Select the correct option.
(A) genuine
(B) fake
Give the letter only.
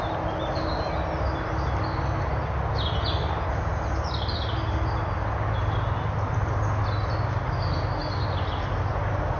A